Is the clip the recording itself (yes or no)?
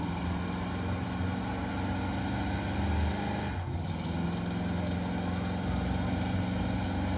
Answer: yes